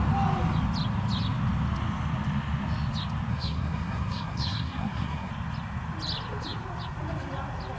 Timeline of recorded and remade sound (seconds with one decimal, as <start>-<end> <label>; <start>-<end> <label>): 0.0-3.3 recorded; 3.3-5.3 remade; 5.3-7.8 recorded

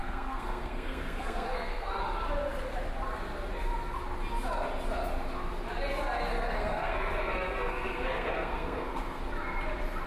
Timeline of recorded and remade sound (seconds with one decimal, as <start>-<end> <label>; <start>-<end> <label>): 0.0-2.0 remade; 2.0-6.3 recorded; 6.3-9.2 remade; 9.2-10.1 recorded

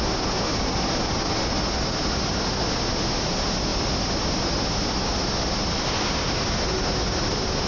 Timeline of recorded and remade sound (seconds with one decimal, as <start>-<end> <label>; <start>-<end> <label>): 0.0-7.7 recorded

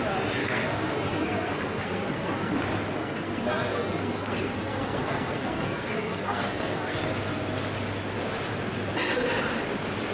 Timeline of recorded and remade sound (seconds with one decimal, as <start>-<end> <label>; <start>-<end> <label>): 0.0-0.4 recorded; 0.4-2.5 remade; 2.5-3.0 recorded; 3.0-7.0 remade; 7.0-10.1 recorded

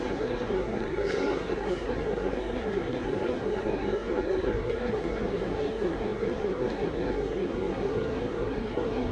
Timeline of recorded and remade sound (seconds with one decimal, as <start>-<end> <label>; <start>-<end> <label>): 0.0-9.1 remade

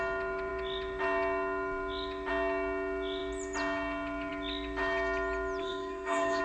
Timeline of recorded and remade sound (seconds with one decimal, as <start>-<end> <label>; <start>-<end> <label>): 0.0-5.6 recorded; 5.6-6.4 remade

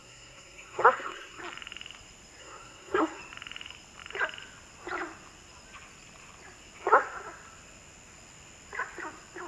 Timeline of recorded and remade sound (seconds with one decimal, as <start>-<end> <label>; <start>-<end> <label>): 0.0-1.4 remade; 1.4-2.4 recorded; 2.4-3.2 remade; 3.2-9.5 recorded